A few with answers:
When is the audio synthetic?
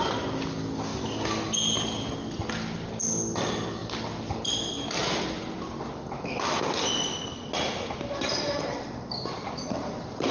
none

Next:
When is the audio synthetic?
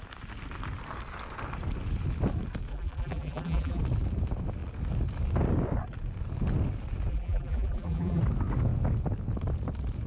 2.7-3.8 (vocoder, BigVGAN v2); 7.1-8.2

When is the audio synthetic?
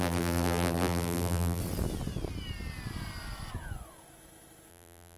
0.0-1.6 (vocoder, BigVGAN v2); 4.7-5.2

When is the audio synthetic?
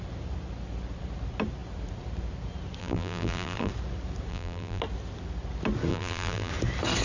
2.8-3.7 (vocoder, BigVGAN v2); 4.3-4.8; 5.9-6.5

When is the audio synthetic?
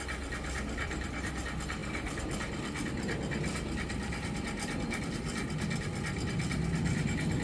0.8-1.4 (vocoder, BigVGAN v2)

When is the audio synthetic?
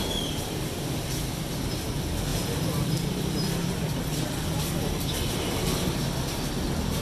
2.3-5.7 (vocoder, BigVGAN v2)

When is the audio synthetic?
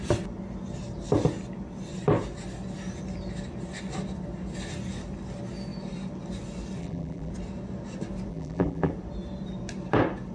6.8-7.3 (vocoder, BigVGAN v2); 8.3-8.9